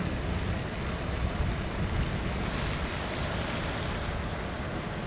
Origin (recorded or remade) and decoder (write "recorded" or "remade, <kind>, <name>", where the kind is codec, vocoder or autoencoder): recorded